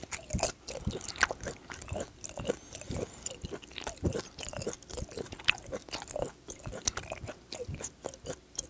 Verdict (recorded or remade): recorded